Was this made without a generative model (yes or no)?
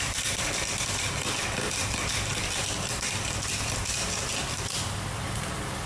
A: no